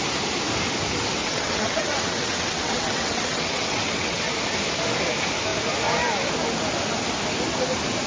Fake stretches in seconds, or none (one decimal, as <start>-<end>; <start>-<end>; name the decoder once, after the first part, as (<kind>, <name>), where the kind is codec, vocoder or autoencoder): 1.2-4.3 (vocoder, WaveNeXt)